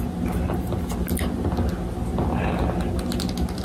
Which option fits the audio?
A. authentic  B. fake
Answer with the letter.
A